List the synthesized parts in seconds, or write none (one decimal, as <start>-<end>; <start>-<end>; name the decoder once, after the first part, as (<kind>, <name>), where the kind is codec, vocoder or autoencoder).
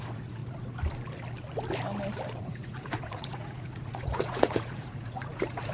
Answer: 0.0-0.4 (vocoder, Vocos); 2.4-5.7